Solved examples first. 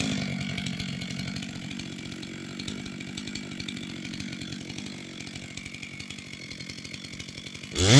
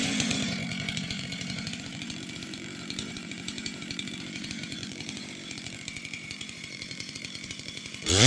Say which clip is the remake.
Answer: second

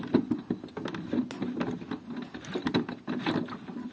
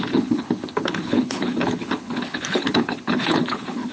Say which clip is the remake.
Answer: second